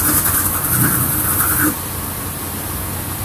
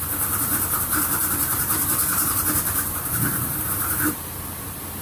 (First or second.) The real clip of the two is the first